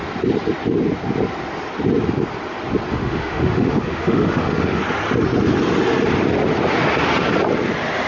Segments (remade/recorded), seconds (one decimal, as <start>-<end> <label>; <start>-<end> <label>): 0.0-2.9 recorded; 2.9-4.8 remade; 4.8-8.1 recorded